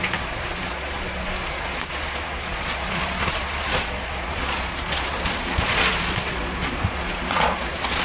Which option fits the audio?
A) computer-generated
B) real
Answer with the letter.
A